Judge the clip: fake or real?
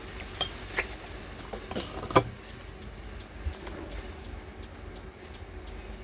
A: real